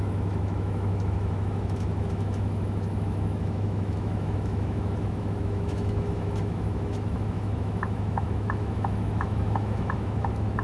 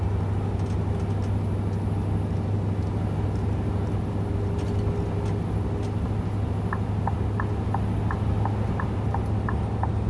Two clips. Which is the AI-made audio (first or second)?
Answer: first